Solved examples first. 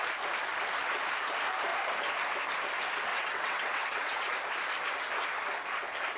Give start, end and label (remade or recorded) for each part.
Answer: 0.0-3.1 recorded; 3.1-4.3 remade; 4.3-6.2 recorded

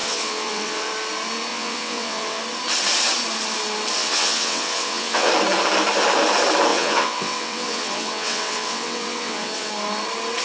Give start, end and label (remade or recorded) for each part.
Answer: 0.0-0.9 remade; 0.9-1.5 recorded; 1.5-2.4 remade; 2.4-4.0 recorded; 4.0-5.3 remade; 5.3-6.7 recorded; 6.7-9.7 remade; 9.7-10.4 recorded